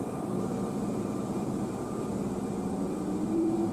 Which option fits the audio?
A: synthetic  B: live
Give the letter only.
A